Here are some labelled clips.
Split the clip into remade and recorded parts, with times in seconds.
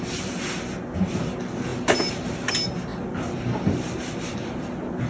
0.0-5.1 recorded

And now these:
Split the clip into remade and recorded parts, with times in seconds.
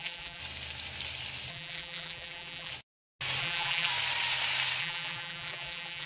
0.0-0.4 remade; 0.4-1.5 recorded; 1.5-2.7 remade; 2.7-3.4 recorded; 3.4-3.9 remade; 3.9-4.8 recorded; 4.8-6.1 remade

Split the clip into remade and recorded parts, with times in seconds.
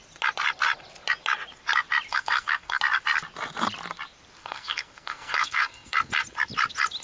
0.0-2.1 recorded; 2.1-2.8 remade; 2.8-4.4 recorded; 4.4-6.1 remade; 6.1-7.0 recorded